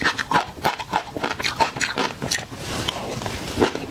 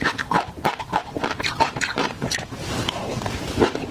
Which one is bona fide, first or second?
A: first